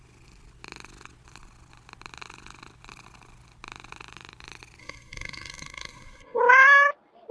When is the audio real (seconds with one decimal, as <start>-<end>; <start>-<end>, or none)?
0.0-4.8; 6.4-7.3